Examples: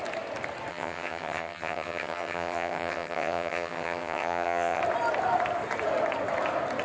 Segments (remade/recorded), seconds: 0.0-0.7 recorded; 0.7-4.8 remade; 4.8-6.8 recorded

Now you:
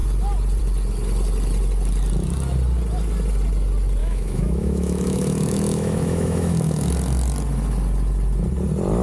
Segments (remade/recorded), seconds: 0.0-4.0 recorded; 4.0-6.9 remade; 6.9-9.0 recorded

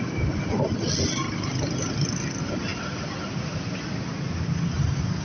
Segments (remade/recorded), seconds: 0.0-5.2 recorded

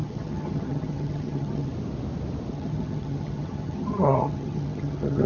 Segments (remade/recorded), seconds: 0.0-1.7 remade; 1.7-2.5 recorded; 2.5-5.3 remade

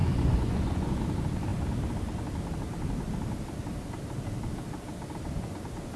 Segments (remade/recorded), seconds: 0.0-1.0 remade; 1.0-6.0 recorded

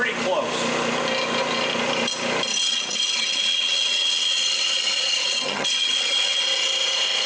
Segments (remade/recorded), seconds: 0.0-2.5 recorded; 2.5-6.4 remade; 6.4-7.3 recorded

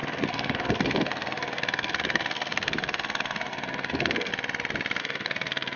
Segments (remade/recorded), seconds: 0.0-4.3 remade; 4.3-5.0 recorded; 5.0-5.8 remade